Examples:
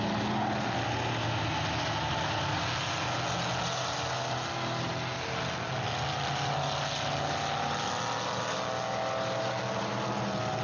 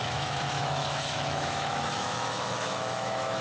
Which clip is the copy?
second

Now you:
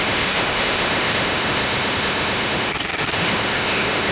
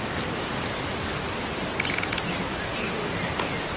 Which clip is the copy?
first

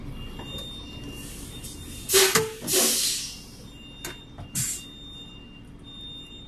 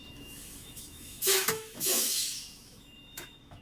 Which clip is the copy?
second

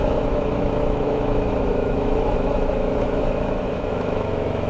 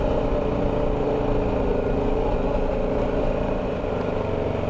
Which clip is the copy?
first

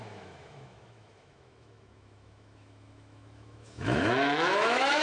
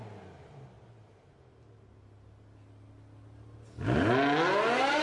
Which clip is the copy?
first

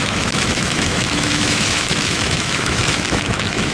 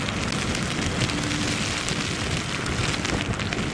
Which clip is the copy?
first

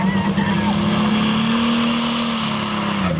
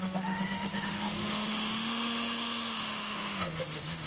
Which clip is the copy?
second